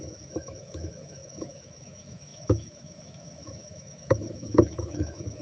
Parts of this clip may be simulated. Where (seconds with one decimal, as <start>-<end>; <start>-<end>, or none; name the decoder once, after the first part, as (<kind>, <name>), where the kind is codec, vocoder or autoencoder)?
0.0-5.4 (autoencoder, DAC-VAE)